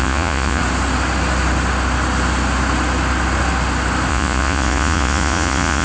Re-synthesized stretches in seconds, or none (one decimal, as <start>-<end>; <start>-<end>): 0.0-0.6; 4.1-5.8